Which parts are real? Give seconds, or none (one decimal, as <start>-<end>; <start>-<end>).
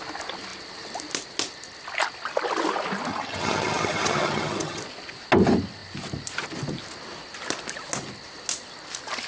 0.0-3.1; 4.8-9.3